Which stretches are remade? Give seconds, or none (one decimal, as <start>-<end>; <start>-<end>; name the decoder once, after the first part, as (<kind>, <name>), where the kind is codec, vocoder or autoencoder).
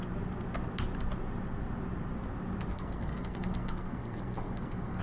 2.7-5.0 (codec, SNAC)